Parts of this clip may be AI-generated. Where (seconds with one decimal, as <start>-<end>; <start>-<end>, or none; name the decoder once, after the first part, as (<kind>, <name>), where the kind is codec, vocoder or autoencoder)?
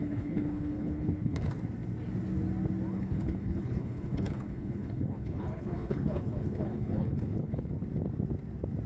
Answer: 0.0-1.5 (codec, HILCodec); 2.9-7.7